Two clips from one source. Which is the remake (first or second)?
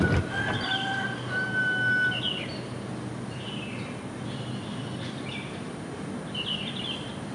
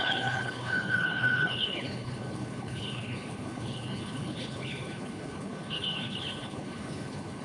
second